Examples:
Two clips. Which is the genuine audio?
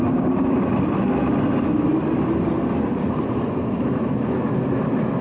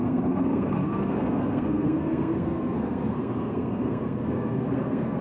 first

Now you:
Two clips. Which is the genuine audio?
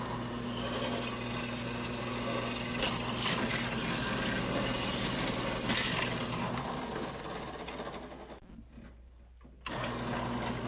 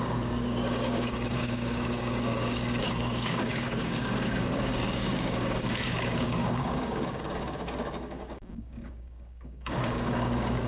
first